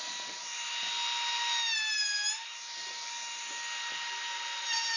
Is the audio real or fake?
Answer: real